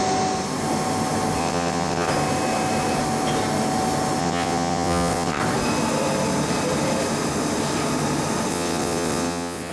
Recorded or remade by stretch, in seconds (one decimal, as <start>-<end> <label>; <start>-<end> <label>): 0.0-1.4 recorded; 1.4-2.1 remade; 2.1-4.2 recorded; 4.2-5.4 remade; 5.4-8.5 recorded; 8.5-9.7 remade